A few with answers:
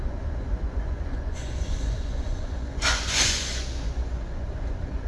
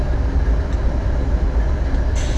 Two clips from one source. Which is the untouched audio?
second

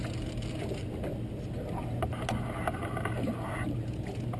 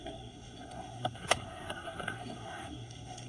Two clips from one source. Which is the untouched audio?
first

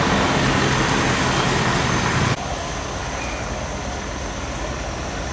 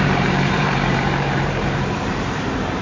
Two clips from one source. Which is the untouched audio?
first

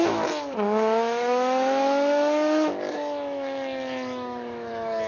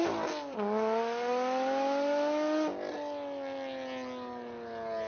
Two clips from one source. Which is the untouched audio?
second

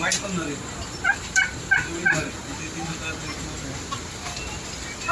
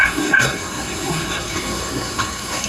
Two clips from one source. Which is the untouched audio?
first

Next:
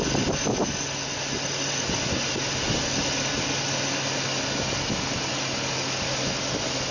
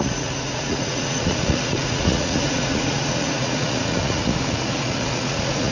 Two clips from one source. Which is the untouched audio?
first